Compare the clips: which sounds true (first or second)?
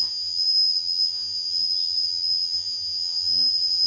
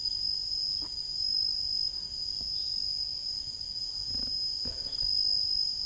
second